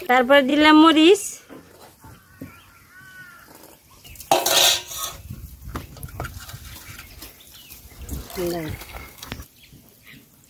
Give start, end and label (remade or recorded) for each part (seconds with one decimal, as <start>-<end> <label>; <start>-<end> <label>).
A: 0.0-8.7 recorded; 8.7-9.3 remade; 9.3-10.5 recorded